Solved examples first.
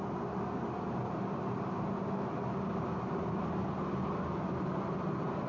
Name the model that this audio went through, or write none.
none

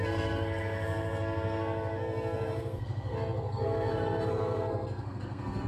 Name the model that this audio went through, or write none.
codec, SNAC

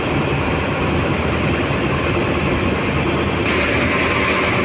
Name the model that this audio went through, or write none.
none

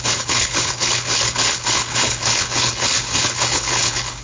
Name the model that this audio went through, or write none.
codec, HILCodec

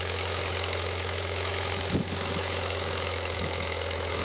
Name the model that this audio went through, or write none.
autoencoder, DAC-VAE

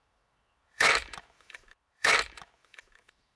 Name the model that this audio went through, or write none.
autoencoder, DAC-VAE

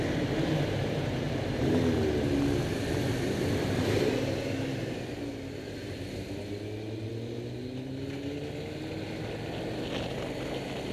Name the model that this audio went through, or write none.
none